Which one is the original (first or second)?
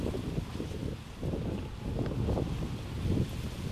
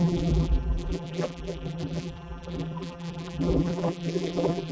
first